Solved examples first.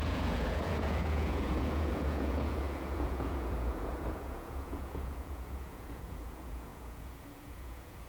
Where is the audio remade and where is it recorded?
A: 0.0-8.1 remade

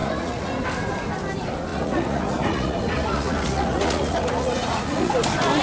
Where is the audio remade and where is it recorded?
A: 0.0-0.5 remade; 0.5-1.7 recorded; 1.7-5.1 remade; 5.1-5.6 recorded

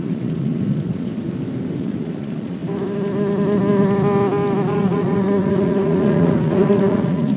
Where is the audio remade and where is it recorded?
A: 0.0-1.1 remade; 1.1-1.8 recorded; 1.8-2.6 remade; 2.6-4.7 recorded; 4.7-7.4 remade